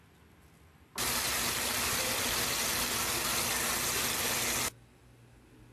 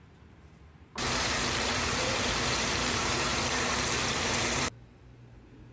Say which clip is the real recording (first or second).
first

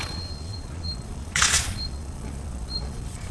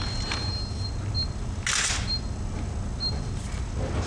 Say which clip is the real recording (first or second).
second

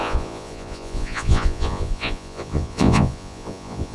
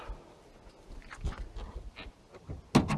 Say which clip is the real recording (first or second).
second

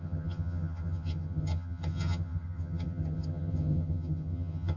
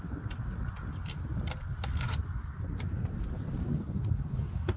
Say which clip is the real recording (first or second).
second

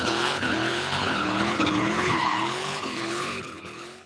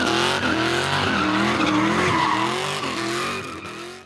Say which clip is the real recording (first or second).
second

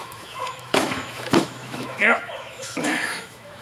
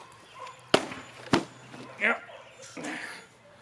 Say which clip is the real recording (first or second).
second